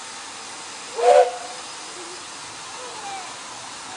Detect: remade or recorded recorded